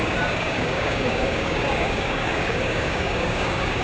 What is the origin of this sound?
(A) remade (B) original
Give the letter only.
A